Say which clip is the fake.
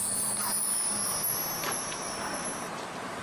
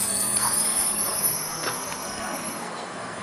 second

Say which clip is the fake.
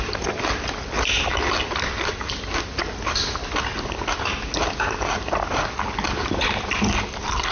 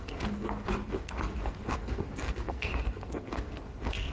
second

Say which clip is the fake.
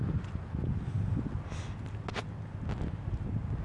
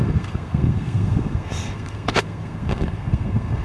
second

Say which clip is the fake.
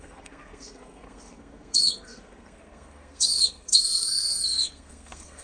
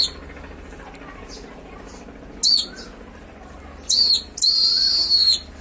first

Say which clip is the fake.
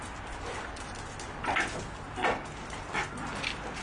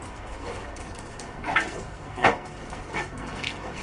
second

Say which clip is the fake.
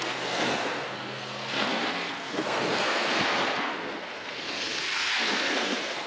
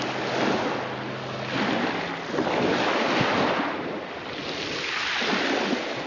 first